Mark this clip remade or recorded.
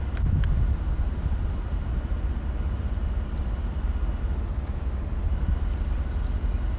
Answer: recorded